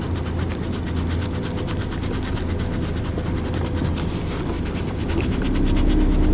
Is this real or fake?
real